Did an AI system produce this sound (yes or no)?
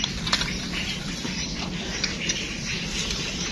no